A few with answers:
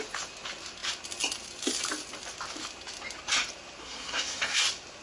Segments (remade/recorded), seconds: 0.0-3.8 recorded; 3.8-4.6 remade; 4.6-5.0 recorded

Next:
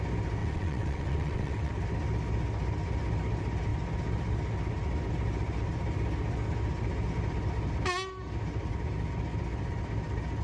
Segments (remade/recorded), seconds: 0.0-0.4 recorded; 0.4-1.7 remade; 1.7-10.4 recorded